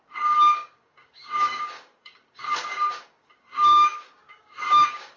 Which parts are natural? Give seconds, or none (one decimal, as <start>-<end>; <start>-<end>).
none